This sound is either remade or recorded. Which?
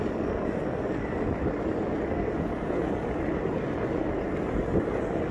recorded